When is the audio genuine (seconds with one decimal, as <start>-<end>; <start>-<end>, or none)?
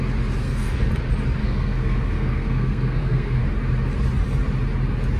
0.0-0.4; 0.9-1.4; 3.4-5.2